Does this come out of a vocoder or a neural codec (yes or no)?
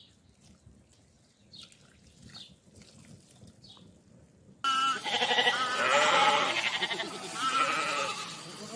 no